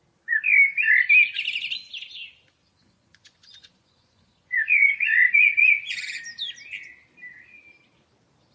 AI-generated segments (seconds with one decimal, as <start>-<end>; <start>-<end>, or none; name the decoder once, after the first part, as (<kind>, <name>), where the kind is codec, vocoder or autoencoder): 2.8-6.0 (vocoder, Vocos)